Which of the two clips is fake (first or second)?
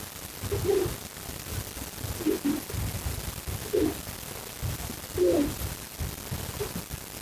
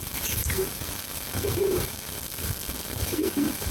second